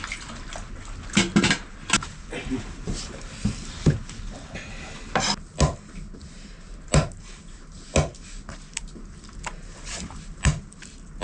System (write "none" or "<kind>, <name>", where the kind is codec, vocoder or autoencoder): none